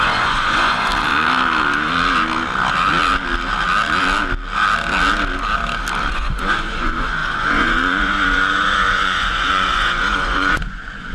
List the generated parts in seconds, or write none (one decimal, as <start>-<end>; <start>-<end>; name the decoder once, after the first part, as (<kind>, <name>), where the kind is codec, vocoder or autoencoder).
0.0-0.9 (vocoder, Vocos); 6.1-11.1